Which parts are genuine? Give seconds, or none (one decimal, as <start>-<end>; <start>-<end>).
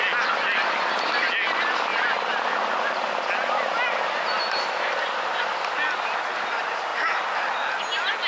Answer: 0.0-8.3